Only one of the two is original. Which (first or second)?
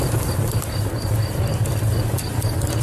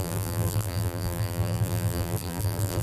first